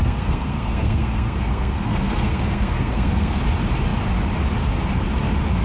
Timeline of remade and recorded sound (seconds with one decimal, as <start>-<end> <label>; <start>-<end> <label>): 0.0-3.4 remade; 3.4-5.6 recorded